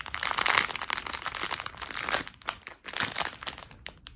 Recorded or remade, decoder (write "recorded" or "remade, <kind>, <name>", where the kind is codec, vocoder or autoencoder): recorded